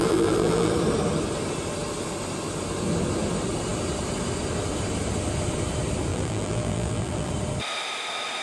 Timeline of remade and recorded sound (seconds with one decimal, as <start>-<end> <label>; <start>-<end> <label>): 0.0-0.7 remade; 0.7-6.1 recorded; 6.1-7.3 remade; 7.3-8.4 recorded